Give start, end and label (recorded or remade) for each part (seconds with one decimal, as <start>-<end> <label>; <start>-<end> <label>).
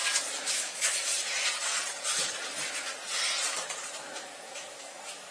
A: 0.0-0.5 recorded; 0.5-1.1 remade; 1.1-3.9 recorded; 3.9-5.3 remade